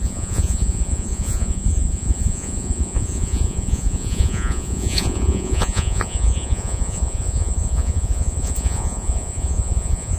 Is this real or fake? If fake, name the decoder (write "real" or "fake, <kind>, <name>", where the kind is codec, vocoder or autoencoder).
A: fake, vocoder, Vocos